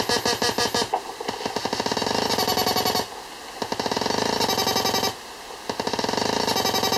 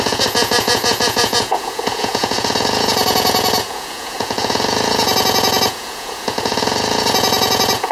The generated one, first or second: second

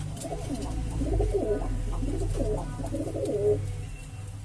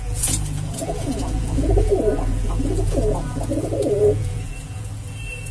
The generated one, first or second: second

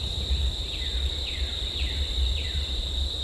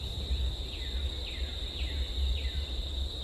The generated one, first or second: first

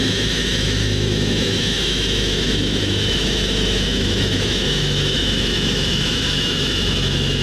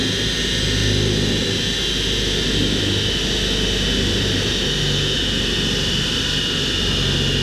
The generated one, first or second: first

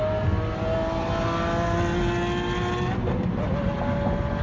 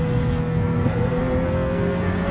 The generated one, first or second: second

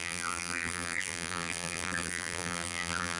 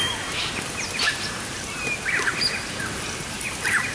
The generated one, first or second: first